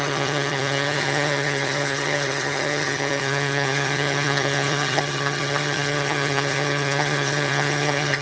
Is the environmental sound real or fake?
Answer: fake